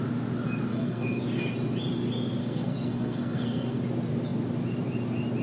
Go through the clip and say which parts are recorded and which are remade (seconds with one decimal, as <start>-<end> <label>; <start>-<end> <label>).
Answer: 0.0-0.7 recorded; 0.7-1.2 remade; 1.2-2.4 recorded; 2.4-3.8 remade; 3.8-5.4 recorded